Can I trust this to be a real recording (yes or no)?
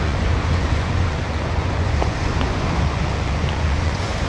no